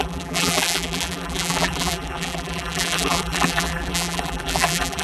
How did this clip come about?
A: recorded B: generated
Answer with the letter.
B